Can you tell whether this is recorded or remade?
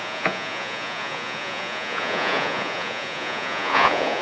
remade